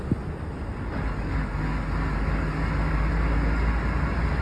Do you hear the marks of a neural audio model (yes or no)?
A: no